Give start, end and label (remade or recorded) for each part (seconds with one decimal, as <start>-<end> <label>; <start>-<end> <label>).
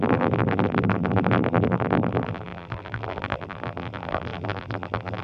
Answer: 0.0-5.2 remade